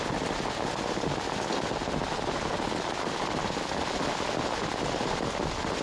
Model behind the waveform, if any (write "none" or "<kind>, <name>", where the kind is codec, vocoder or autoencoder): none